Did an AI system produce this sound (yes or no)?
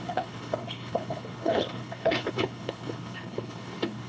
yes